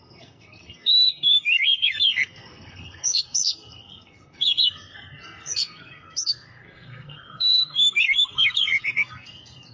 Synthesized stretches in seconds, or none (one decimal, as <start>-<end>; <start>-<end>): 0.0-9.7